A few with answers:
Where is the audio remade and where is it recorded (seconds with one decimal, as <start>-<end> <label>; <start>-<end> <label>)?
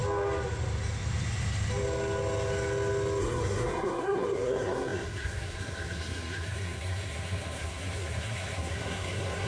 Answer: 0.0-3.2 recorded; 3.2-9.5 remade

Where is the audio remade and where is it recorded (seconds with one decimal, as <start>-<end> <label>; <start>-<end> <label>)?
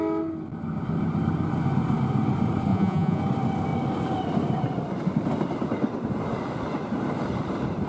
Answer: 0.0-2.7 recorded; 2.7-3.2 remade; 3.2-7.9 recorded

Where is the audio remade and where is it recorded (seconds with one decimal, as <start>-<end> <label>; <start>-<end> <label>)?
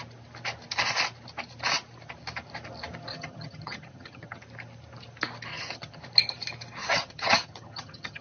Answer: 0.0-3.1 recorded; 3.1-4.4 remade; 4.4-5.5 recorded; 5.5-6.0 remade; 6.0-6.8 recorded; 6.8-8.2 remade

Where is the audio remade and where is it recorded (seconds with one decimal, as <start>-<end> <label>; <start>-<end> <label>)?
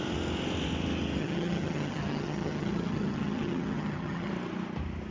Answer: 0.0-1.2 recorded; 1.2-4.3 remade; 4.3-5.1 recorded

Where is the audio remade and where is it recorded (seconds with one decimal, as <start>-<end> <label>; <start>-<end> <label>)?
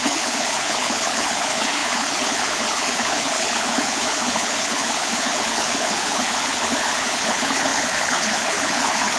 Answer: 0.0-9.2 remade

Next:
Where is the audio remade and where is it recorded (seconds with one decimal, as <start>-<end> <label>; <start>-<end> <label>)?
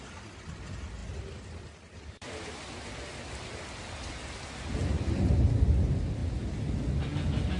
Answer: 0.0-7.6 recorded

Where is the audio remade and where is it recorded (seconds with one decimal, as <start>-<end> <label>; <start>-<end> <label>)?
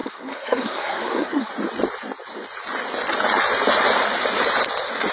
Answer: 0.0-1.5 remade; 1.5-5.1 recorded